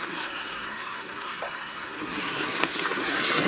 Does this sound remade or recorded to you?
remade